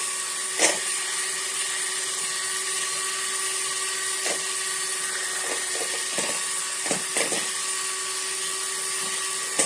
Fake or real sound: real